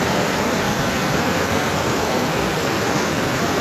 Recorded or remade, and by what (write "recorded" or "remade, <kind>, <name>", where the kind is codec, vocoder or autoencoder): remade, codec, SNAC